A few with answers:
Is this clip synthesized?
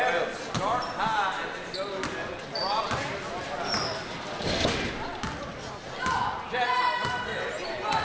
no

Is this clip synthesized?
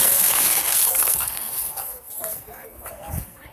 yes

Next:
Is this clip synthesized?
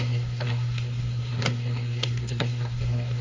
yes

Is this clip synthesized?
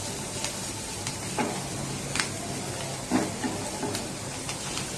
no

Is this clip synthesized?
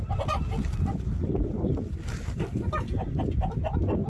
no